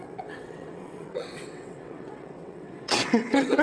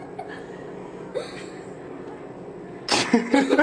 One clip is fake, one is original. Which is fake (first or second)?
first